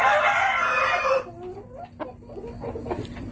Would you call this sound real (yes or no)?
yes